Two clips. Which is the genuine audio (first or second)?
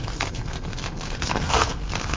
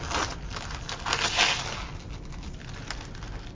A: second